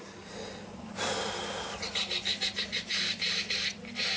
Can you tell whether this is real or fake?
real